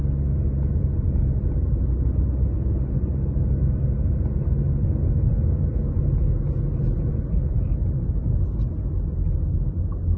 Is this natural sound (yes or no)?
yes